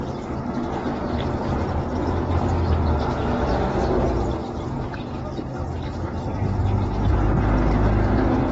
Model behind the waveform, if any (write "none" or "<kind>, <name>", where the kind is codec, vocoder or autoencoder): none